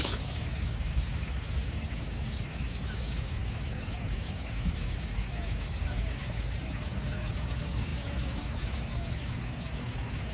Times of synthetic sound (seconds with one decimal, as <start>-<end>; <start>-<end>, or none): 0.0-10.3